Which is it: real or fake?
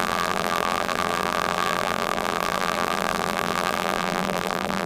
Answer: fake